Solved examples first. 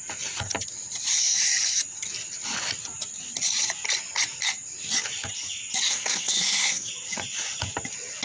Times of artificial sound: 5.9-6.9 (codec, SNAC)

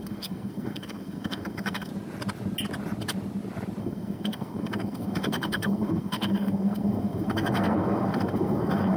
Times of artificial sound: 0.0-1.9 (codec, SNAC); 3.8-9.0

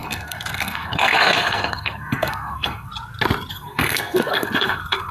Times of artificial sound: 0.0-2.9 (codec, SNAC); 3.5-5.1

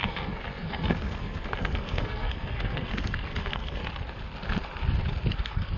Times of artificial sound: 0.0-3.8 (codec, SNAC); 5.3-5.8

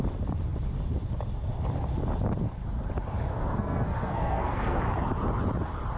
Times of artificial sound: 3.3-4.8 (codec, SNAC)